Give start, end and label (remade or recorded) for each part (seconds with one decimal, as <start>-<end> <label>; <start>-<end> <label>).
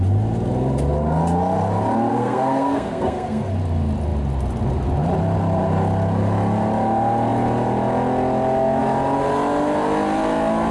0.0-2.1 recorded; 2.1-3.5 remade; 3.5-10.7 recorded